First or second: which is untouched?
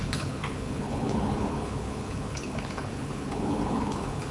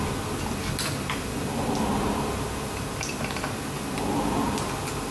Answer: second